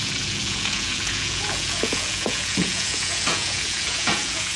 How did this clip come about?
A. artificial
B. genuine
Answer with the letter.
A